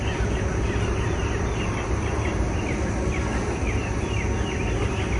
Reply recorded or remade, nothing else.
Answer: recorded